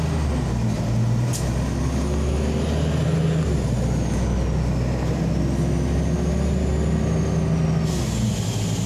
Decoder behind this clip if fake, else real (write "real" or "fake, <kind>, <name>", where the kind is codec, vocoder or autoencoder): real